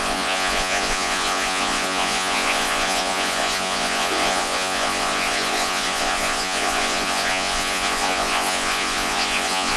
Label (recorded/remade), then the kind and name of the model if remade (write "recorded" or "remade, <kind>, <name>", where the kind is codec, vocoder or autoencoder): remade, vocoder, Vocos